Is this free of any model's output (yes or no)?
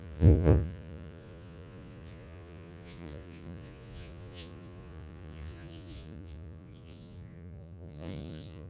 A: no